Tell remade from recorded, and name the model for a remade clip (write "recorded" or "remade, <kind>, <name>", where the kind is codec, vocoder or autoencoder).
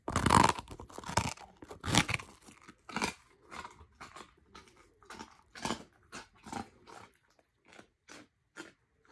recorded